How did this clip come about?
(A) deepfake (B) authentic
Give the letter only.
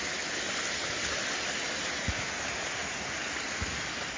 B